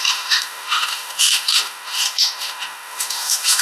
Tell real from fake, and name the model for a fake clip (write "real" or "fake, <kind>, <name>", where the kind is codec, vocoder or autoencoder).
fake, autoencoder, DAC-VAE